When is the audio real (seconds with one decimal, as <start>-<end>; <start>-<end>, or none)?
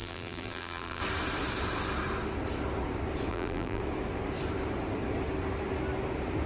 1.0-3.3; 3.8-6.5